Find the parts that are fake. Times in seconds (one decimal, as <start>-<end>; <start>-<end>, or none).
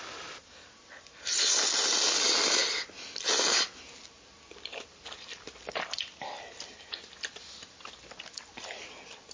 none